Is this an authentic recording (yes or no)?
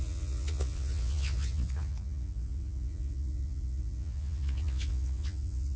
no